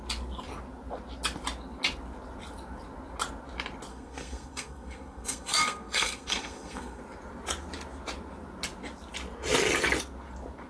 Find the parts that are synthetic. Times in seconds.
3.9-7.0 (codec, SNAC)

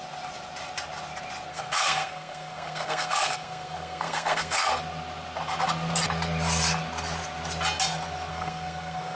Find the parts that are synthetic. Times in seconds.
1.5-4.7 (codec, SNAC); 8.3-9.2